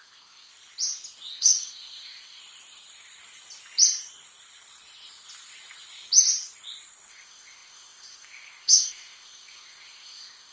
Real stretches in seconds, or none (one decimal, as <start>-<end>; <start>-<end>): 0.5-1.3; 2.4-7.1